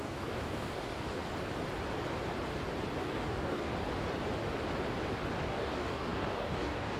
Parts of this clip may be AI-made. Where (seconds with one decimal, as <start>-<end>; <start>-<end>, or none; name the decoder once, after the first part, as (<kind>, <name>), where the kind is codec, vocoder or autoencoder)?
0.0-1.2 (codec, DAC); 3.0-3.7; 5.4-7.0